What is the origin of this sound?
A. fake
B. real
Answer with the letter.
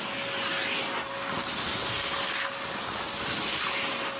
B